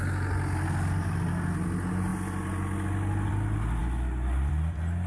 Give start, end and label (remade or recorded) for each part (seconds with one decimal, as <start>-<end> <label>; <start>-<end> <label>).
0.0-5.1 recorded